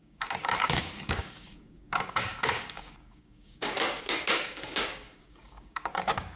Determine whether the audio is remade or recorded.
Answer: remade